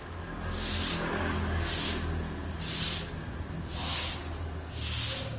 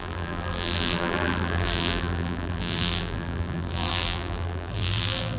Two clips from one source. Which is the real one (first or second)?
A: first